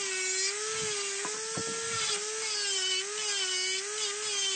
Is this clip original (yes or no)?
yes